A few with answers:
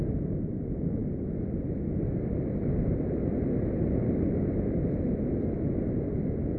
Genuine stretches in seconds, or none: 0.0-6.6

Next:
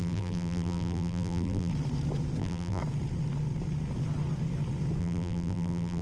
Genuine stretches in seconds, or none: 1.7-2.4; 2.8-5.0